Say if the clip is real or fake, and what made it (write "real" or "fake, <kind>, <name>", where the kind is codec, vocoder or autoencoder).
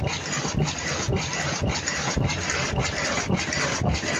real